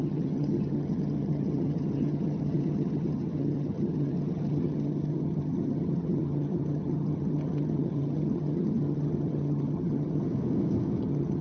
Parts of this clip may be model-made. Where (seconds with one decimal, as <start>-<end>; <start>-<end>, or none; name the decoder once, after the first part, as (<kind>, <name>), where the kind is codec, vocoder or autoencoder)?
0.0-10.3 (vocoder, HiFi-GAN); 11.0-11.4